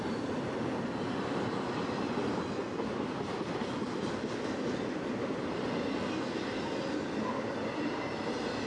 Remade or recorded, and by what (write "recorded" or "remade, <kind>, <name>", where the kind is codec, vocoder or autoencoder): recorded